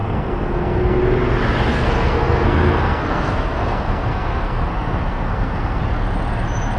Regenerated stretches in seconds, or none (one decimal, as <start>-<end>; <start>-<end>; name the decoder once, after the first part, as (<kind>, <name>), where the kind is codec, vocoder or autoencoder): 0.0-1.0 (codec, SNAC); 1.7-5.8